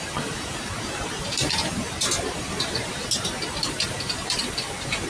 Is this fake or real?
fake